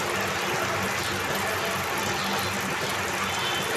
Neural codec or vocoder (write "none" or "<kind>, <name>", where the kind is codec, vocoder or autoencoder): none